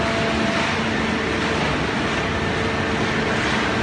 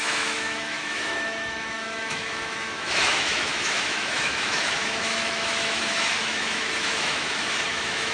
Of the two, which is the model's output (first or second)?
second